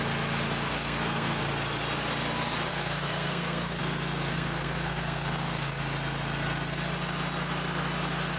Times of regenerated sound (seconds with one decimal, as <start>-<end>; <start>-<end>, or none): 0.7-1.4; 2.7-3.8; 4.3-5.8